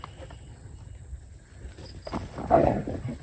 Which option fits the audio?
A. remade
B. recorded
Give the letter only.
B